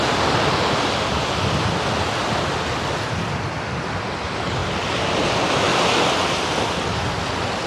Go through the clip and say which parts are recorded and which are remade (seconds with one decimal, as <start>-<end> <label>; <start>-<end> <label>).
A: 0.0-7.7 recorded